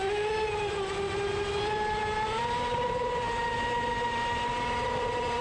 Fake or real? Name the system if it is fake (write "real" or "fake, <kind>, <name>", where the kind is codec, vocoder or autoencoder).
real